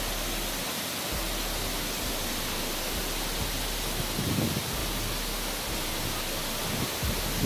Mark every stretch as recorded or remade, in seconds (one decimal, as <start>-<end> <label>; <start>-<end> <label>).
0.0-7.5 recorded